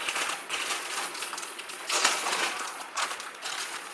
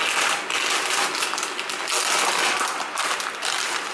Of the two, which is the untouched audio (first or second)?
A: second